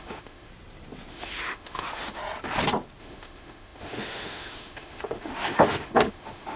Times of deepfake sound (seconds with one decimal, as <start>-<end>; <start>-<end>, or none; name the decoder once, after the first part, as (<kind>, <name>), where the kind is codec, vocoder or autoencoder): 0.0-0.5 (autoencoder, DAC-VAE); 1.1-2.2; 3.0-6.6